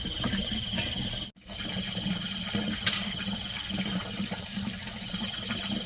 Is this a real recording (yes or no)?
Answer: yes